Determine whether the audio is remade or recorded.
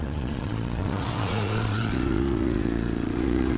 remade